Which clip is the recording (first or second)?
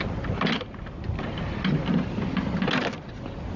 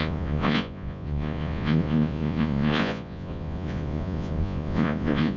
first